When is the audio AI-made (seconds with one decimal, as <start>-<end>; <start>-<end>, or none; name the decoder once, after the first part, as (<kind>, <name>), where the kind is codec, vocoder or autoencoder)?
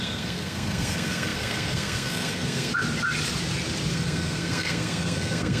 0.0-2.7 (codec, SNAC); 3.9-5.6